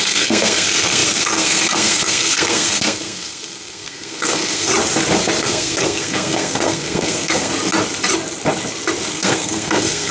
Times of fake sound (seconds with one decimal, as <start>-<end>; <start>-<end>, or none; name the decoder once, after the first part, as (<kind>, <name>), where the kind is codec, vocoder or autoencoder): 0.0-4.7 (codec, SNAC); 5.4-7.5; 9.1-10.1